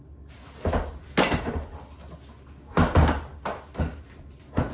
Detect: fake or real real